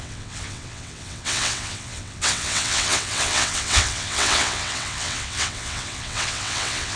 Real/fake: fake